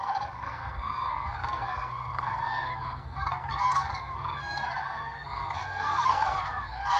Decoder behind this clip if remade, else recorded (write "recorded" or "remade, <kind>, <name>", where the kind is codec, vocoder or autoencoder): remade, codec, SNAC